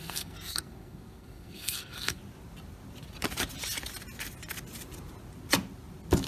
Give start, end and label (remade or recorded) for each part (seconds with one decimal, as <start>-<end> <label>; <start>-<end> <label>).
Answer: 0.0-2.2 remade; 2.2-6.3 recorded